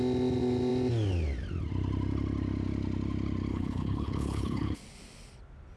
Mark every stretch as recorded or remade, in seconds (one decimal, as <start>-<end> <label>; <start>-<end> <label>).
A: 0.0-3.5 recorded; 3.5-4.8 remade; 4.8-5.8 recorded